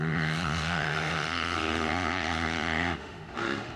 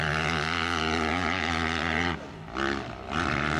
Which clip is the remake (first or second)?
first